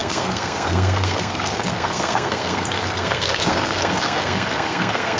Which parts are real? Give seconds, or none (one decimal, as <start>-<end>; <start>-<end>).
none